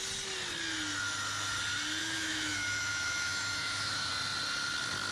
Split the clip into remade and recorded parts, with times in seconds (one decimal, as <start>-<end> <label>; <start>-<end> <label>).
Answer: 0.0-2.0 recorded; 2.0-4.1 remade; 4.1-5.1 recorded